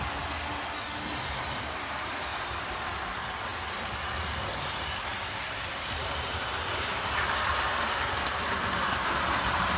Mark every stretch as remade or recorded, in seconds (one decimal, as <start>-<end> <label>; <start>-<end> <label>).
0.0-2.3 recorded; 2.3-3.0 remade; 3.0-5.1 recorded; 5.1-7.8 remade; 7.8-9.8 recorded